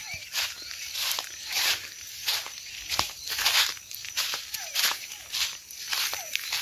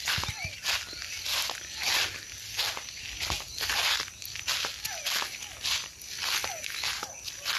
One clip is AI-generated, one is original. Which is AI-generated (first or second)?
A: first